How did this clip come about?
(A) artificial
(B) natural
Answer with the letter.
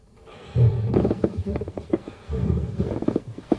A